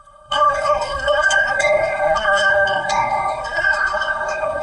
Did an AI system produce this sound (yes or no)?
yes